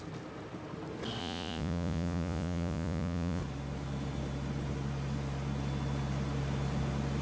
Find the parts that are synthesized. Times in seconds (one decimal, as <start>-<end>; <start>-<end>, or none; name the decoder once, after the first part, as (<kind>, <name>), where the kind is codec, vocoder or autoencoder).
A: 1.2-3.4 (vocoder, Vocos)